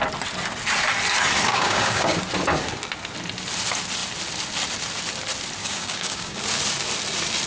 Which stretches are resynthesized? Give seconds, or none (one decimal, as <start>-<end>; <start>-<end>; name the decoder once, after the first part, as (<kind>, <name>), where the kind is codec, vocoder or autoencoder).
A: 1.5-2.2 (codec, DAC); 5.6-6.4